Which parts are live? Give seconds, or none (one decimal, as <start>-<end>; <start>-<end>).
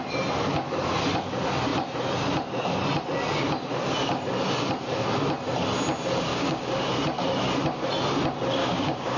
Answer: 0.0-6.3; 6.9-8.6